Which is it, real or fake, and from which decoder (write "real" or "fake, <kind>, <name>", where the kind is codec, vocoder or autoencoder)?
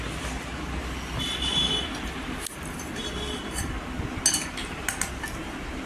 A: real